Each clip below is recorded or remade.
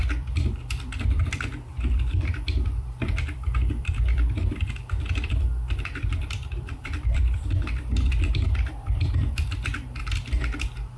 remade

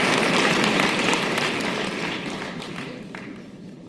remade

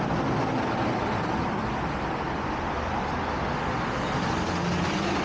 recorded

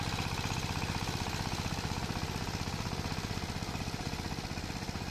recorded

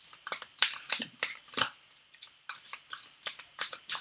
remade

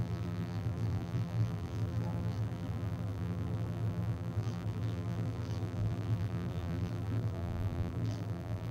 remade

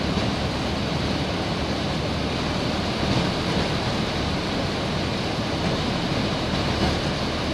recorded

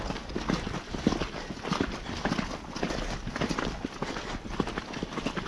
recorded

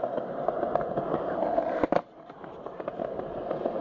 remade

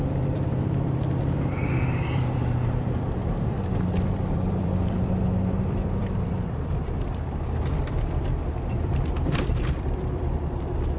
remade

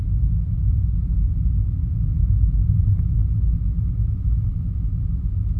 recorded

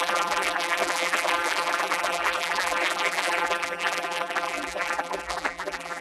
remade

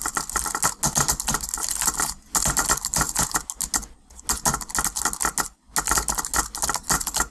recorded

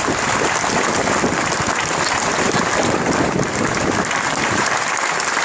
remade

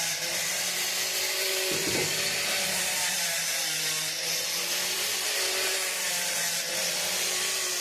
remade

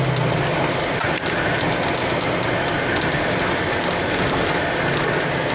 recorded